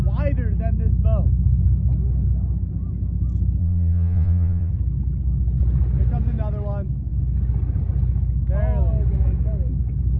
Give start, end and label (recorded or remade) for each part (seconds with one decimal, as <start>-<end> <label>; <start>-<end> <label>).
0.0-3.6 recorded; 3.6-4.7 remade; 4.7-10.2 recorded